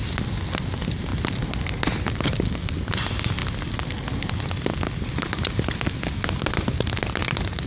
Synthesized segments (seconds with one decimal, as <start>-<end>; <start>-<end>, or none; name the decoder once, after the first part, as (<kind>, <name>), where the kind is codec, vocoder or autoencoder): none